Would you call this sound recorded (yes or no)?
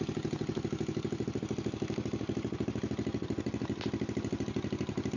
yes